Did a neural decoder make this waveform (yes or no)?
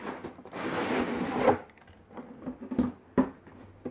no